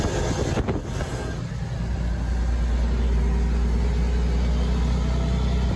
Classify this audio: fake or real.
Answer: real